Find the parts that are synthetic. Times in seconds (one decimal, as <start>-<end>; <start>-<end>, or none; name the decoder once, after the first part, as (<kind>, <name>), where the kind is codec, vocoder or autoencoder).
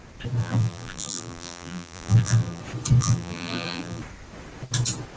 0.4-2.6 (vocoder, BigVGAN v2); 3.0-4.0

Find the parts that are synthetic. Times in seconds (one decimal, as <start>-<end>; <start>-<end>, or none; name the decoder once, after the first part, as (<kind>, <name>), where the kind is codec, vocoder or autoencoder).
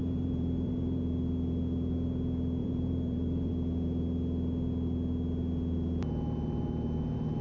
0.0-1.0 (vocoder, BigVGAN v2); 2.6-3.5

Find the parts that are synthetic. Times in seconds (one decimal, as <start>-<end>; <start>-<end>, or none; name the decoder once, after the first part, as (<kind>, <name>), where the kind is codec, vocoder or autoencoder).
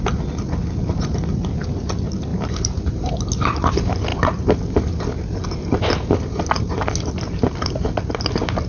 2.3-3.2 (vocoder, BigVGAN v2)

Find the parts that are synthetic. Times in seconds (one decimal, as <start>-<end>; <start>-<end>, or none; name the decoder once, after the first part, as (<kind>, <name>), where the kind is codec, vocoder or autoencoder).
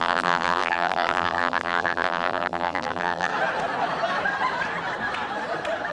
0.0-3.3 (vocoder, BigVGAN v2)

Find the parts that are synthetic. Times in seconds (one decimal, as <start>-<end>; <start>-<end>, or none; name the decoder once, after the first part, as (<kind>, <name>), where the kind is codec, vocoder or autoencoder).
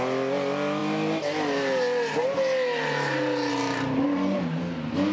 none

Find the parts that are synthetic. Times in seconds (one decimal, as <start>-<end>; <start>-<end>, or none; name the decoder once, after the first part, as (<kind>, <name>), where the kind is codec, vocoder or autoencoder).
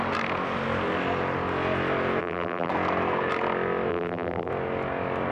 2.2-2.7 (vocoder, BigVGAN v2); 3.9-4.5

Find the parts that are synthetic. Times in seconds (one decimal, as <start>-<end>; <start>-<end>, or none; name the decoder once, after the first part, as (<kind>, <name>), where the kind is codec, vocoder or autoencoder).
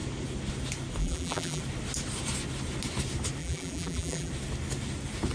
1.0-1.6 (vocoder, BigVGAN v2); 3.4-4.3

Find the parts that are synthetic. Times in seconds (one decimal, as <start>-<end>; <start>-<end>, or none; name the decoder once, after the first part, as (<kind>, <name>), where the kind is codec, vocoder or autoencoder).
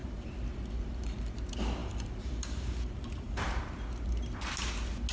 0.0-1.3 (vocoder, BigVGAN v2); 1.8-3.6